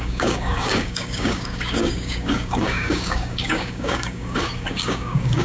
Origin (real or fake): fake